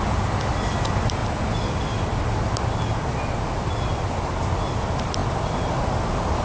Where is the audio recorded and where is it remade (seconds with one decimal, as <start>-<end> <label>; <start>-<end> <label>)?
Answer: 0.0-6.4 recorded

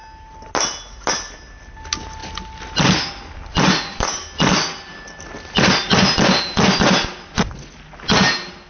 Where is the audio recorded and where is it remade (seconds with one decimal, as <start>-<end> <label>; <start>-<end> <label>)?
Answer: 0.0-8.7 recorded

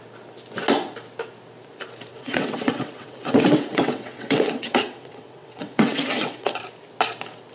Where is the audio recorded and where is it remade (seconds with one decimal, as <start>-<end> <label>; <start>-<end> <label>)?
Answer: 0.0-2.1 recorded; 2.1-6.6 remade; 6.6-7.5 recorded